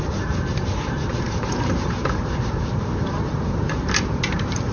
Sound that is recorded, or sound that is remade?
remade